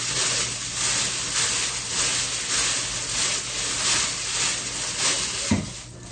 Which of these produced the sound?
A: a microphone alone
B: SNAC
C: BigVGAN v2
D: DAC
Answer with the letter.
A